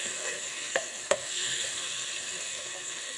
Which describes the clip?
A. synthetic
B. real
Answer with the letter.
A